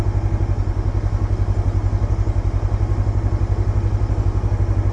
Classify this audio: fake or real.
real